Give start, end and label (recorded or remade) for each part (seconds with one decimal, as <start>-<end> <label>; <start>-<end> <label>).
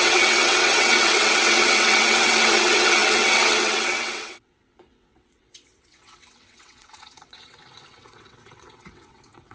0.0-9.5 remade